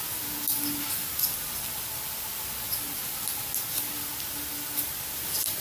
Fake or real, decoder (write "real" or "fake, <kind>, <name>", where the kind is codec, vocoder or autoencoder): real